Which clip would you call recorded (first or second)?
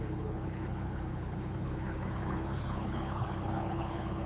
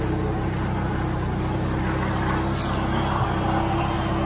second